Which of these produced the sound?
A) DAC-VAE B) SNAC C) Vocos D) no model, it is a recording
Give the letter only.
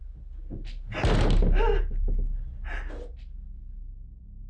D